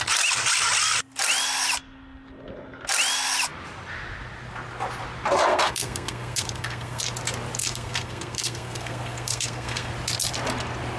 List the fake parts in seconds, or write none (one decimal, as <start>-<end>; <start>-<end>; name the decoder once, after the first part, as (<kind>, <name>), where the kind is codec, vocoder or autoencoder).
5.5-7.0 (codec, SNAC); 7.6-9.9